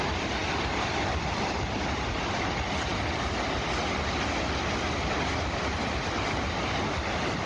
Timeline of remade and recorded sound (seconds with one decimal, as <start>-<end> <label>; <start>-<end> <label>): 0.0-7.5 recorded